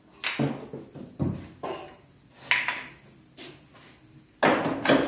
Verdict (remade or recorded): recorded